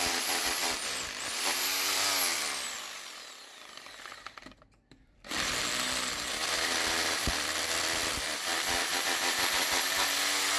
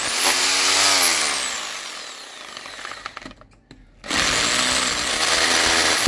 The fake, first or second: first